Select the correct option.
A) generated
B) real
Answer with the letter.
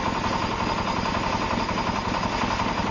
B